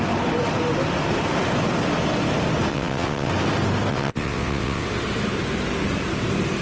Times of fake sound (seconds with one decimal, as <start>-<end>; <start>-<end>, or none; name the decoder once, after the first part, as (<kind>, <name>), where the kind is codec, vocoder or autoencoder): 2.7-3.3 (vocoder, WaveNeXt); 3.9-4.9